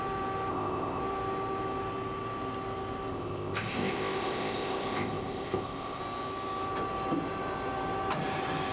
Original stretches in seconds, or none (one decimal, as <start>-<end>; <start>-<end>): 0.0-0.5; 1.0-3.1; 6.0-8.7